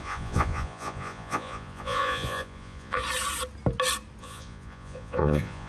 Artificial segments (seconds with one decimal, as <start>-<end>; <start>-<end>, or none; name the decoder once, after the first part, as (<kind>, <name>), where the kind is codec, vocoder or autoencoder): 0.0-3.0 (vocoder, Vocos); 4.2-5.7

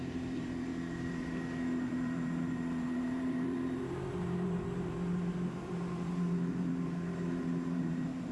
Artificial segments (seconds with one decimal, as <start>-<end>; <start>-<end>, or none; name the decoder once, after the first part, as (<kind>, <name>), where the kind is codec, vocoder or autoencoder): 0.0-0.7 (vocoder, BigVGAN v2); 1.9-8.3

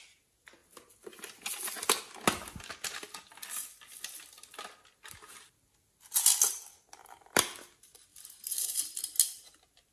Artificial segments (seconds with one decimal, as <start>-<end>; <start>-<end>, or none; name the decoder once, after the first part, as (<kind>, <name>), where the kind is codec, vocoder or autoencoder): 8.1-8.8 (vocoder, BigVGAN v2)

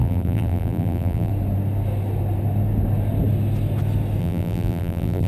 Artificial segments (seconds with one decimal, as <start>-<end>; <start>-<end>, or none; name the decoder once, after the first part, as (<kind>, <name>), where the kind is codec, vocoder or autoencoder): 0.0-1.3 (vocoder, BigVGAN v2); 4.2-5.3

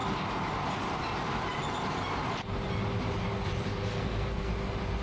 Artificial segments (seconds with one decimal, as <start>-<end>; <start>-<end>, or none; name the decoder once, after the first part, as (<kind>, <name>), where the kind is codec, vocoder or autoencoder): 3.9-4.5 (codec, SNAC)

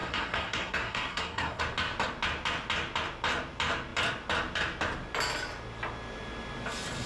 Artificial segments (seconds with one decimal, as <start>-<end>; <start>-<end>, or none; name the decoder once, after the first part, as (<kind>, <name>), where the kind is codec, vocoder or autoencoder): 0.0-1.6 (codec, SNAC)